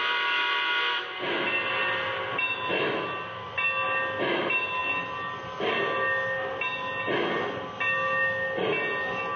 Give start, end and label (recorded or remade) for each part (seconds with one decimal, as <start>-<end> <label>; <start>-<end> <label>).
0.0-9.4 recorded